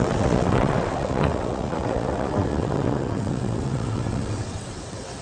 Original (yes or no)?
no